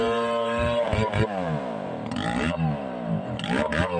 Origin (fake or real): fake